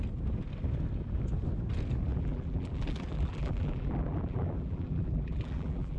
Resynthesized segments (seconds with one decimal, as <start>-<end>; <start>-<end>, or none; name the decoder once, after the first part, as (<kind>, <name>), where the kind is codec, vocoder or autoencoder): 2.1-6.0 (vocoder, BigVGAN v2)